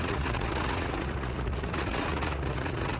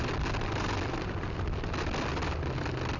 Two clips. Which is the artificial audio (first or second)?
first